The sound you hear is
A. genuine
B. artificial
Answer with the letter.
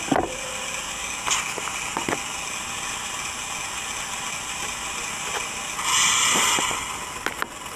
A